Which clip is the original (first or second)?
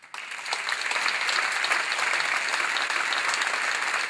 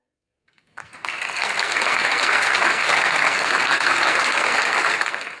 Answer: first